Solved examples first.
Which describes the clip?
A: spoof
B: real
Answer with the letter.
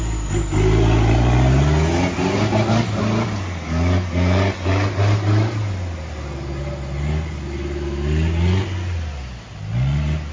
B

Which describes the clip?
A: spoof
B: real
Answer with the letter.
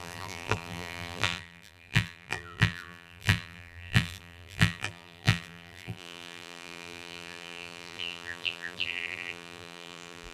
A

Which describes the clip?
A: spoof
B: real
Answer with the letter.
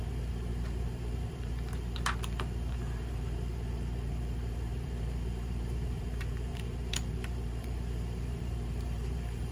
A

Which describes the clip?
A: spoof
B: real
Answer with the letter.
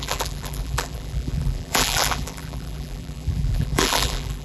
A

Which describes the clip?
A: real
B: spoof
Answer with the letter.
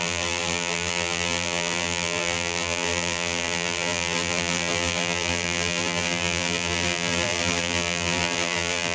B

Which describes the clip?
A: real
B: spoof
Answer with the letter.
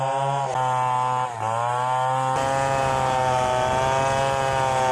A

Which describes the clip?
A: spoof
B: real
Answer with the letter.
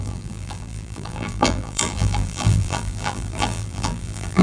A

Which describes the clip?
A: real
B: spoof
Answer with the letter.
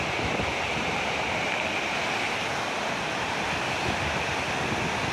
A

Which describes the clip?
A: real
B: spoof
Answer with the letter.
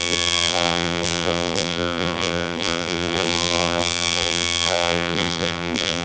B